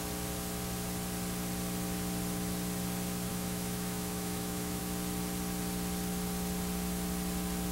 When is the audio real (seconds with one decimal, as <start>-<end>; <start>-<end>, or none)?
0.0-3.3; 4.8-7.7